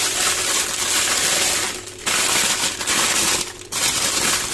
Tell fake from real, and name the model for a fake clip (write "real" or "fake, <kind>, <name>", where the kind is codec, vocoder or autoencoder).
real